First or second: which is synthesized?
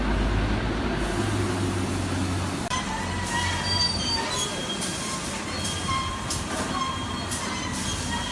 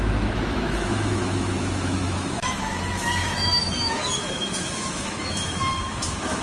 second